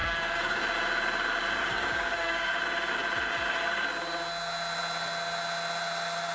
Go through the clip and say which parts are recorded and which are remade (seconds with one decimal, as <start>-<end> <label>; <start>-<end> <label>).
0.0-0.6 remade; 0.6-1.6 recorded; 1.6-2.6 remade; 2.6-6.3 recorded